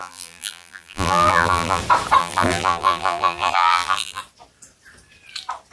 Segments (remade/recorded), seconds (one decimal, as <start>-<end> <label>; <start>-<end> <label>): 0.0-1.8 remade; 1.8-2.2 recorded; 2.2-4.2 remade; 4.2-5.7 recorded